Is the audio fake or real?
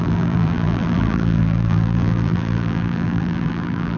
fake